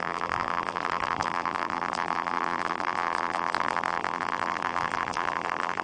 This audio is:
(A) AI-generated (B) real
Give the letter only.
A